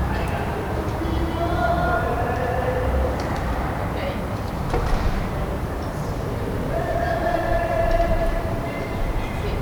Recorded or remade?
remade